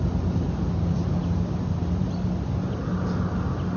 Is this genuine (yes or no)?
yes